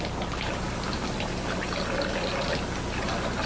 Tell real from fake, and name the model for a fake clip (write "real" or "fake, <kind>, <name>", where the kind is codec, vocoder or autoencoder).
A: real